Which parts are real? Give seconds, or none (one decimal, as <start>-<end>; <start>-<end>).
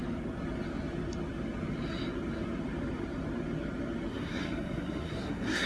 0.0-4.1